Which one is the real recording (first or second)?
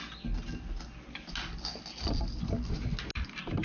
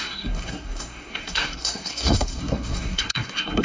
first